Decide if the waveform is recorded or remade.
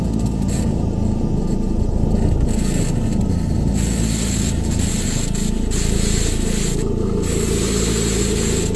recorded